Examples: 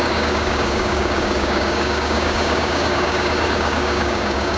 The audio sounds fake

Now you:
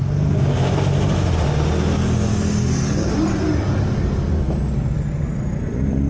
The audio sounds real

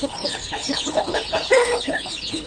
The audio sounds fake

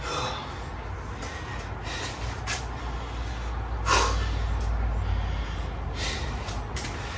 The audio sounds real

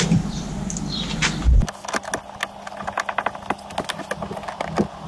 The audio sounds real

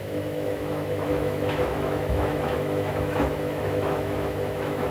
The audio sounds fake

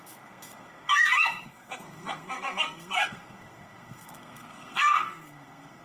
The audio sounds fake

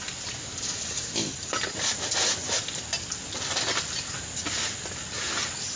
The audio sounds real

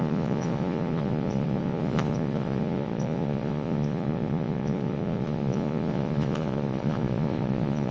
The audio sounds fake